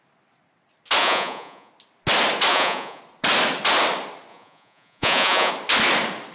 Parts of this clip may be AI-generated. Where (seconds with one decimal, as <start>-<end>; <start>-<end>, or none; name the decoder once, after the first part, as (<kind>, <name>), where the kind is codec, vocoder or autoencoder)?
1.0-1.7 (vocoder, Vocos); 2.5-3.0; 4.3-5.5